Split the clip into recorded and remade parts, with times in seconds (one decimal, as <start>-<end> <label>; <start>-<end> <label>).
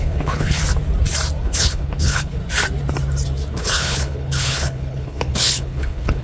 0.0-0.6 remade; 0.6-1.4 recorded; 1.4-2.4 remade; 2.4-3.5 recorded; 3.5-6.2 remade